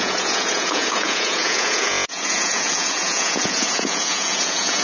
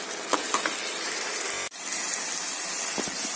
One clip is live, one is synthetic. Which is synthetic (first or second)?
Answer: first